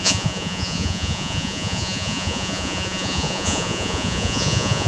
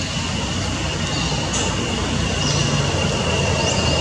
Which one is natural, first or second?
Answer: second